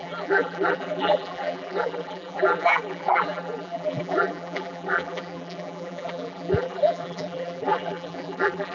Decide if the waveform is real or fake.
fake